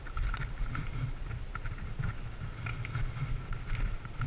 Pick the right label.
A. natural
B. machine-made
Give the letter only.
A